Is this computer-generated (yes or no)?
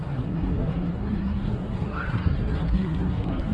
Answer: yes